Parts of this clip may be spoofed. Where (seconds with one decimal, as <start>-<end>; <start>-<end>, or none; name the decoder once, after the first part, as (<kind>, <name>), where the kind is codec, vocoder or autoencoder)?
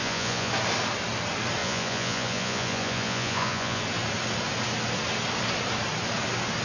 0.0-0.5 (vocoder, Vocos); 1.6-3.8